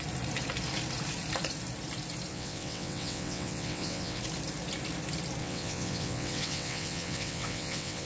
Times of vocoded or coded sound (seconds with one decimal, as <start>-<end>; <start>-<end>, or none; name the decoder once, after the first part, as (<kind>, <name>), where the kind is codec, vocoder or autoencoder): 2.3-4.2 (vocoder, WaveNeXt); 5.4-8.1